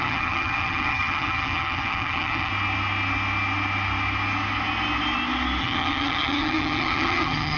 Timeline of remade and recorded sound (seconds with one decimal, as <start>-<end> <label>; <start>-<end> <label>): 0.0-2.5 remade; 2.5-5.6 recorded; 5.6-7.6 remade